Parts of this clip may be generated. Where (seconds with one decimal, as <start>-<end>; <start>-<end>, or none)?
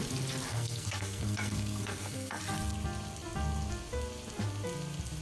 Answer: 0.5-2.4